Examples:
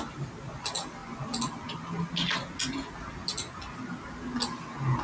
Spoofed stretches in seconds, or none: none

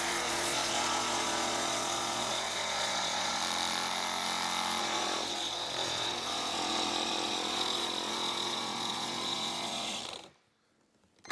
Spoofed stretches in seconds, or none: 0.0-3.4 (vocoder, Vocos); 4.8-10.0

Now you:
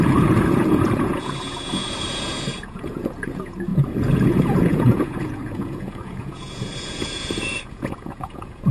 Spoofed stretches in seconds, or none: 0.0-8.7 (vocoder, Vocos)